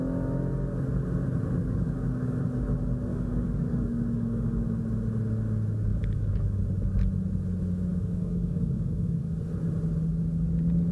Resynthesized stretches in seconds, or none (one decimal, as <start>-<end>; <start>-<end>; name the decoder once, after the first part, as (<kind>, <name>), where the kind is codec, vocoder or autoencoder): 1.6-2.4 (codec, DAC); 3.1-4.6; 5.9-6.6; 7.9-9.4